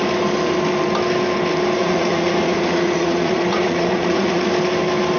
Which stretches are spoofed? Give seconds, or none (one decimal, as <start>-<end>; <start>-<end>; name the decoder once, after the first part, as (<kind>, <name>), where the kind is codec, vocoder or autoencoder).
1.8-4.5 (vocoder, Vocos)